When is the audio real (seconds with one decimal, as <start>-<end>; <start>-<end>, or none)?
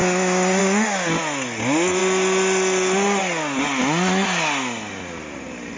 0.0-5.8